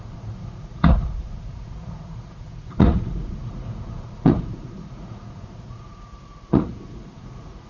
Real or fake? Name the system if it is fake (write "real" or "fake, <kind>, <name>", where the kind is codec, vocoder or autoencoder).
fake, vocoder, Vocos